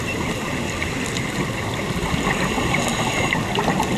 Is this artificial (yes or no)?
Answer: no